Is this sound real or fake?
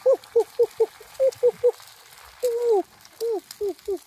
real